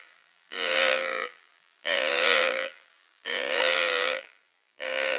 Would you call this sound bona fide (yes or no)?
no